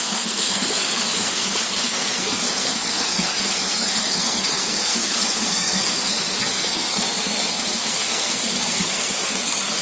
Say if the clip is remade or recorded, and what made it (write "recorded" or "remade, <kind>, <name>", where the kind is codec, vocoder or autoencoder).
remade, codec, SNAC